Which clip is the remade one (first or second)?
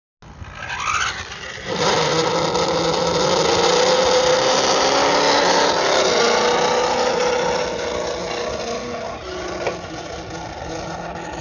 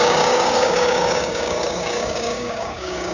second